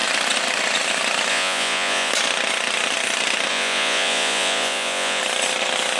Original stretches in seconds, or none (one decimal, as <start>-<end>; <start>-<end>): 0.0-1.3; 2.1-3.5; 5.2-6.0